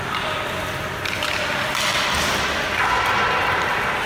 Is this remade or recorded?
recorded